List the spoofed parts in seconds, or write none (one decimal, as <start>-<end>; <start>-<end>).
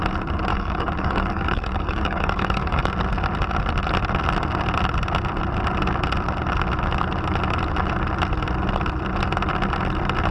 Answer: 0.5-2.9